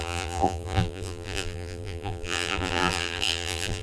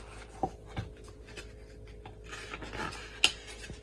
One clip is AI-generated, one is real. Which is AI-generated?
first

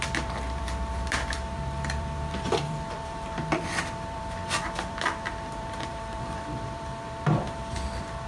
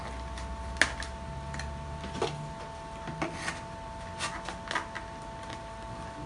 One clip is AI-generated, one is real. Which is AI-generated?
first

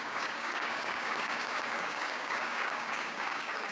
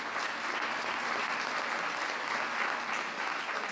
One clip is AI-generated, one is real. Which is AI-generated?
first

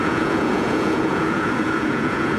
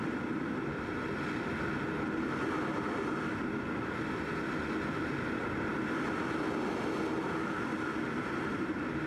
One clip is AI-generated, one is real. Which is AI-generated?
first